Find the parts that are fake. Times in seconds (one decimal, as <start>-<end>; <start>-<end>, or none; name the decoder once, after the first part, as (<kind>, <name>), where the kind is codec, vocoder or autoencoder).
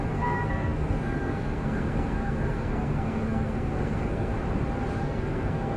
0.0-4.3 (codec, SNAC); 5.0-5.8